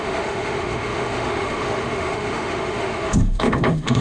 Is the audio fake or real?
fake